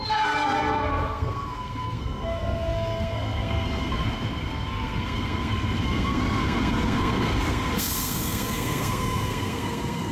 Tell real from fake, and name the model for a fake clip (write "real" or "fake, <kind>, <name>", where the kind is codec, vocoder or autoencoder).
fake, codec, SNAC